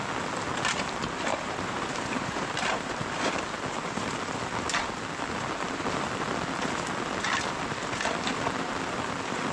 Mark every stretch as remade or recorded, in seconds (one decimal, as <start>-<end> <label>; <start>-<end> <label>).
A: 0.0-1.3 recorded; 1.3-2.9 remade; 2.9-9.5 recorded